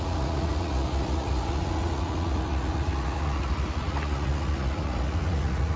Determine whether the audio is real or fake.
fake